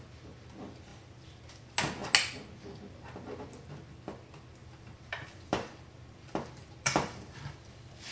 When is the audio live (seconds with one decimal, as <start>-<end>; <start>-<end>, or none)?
0.0-0.9; 1.5-4.6